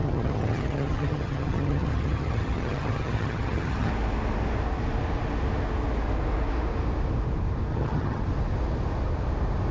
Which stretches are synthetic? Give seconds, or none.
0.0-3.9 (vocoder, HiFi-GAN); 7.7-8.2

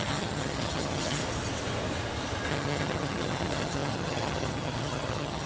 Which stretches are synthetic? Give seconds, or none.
0.0-1.2 (vocoder, HiFi-GAN); 2.5-5.5

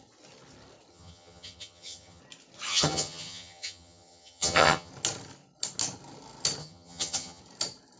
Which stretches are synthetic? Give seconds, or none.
0.9-2.2 (vocoder, HiFi-GAN); 2.7-4.9; 6.6-7.4

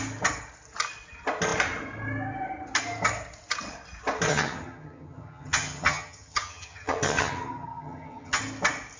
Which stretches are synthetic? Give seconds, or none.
4.3-8.4 (vocoder, HiFi-GAN)

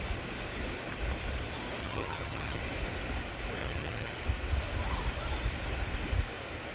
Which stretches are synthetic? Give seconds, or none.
1.8-2.6 (vocoder, HiFi-GAN); 3.6-4.1

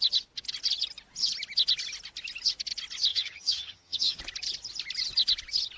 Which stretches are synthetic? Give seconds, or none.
3.1-4.2 (vocoder, HiFi-GAN)